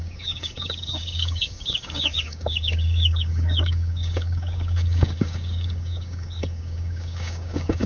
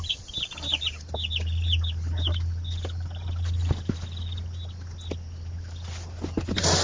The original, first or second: second